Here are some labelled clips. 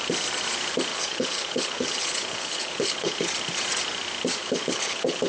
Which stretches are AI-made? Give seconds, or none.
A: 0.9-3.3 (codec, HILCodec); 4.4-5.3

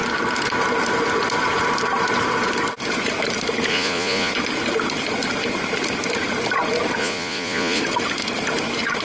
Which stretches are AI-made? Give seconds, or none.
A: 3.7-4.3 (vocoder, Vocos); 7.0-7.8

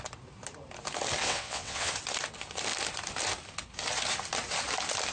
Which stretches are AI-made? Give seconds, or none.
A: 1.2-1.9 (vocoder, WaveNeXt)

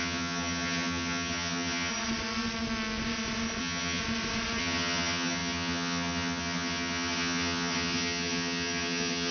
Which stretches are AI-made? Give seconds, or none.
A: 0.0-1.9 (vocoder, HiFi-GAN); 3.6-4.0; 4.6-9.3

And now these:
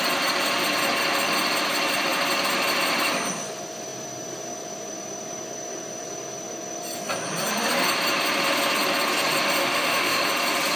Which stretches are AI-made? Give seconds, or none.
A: 9.6-10.3 (autoencoder, DAC-VAE)

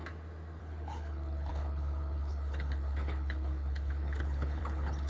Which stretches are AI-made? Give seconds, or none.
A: 0.6-5.1 (codec, HILCodec)